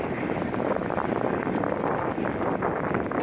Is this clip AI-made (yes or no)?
no